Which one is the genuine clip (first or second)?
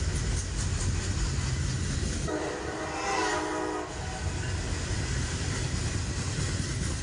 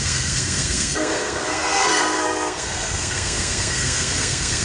first